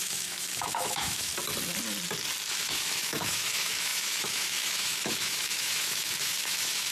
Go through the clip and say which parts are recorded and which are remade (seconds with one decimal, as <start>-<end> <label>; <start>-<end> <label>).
0.0-1.3 remade; 1.3-2.5 recorded; 2.5-6.9 remade